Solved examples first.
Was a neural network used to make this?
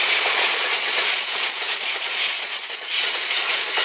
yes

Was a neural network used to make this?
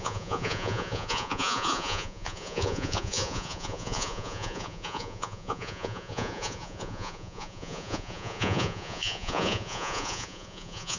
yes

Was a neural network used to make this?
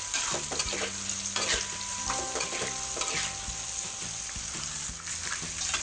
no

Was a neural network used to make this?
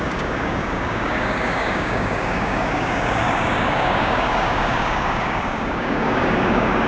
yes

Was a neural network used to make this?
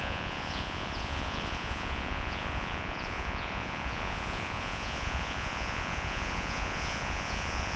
yes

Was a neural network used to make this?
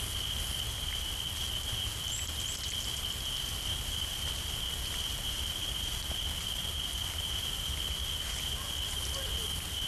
no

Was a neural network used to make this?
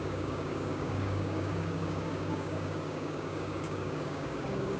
yes